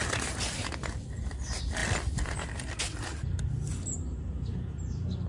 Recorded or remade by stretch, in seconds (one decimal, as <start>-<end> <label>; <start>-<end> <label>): 0.0-5.3 recorded